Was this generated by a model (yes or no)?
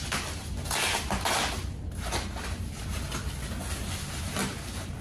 no